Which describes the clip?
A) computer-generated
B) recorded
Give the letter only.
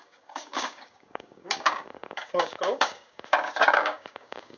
A